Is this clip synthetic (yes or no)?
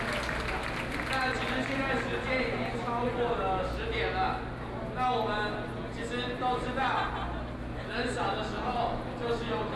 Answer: no